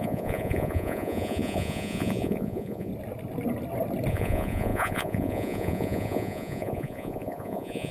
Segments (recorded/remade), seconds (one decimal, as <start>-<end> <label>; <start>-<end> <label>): 0.0-2.9 remade; 2.9-4.1 recorded; 4.1-7.9 remade